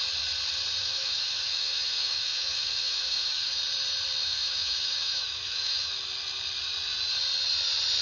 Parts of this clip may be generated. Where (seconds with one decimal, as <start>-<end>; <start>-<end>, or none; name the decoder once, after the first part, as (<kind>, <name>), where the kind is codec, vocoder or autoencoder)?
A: 0.8-3.6 (autoencoder, DAC-VAE); 4.2-5.9